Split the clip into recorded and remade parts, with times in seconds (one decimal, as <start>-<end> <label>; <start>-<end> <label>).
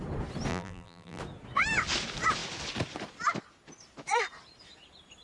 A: 0.0-0.5 recorded; 0.5-1.2 remade; 1.2-5.2 recorded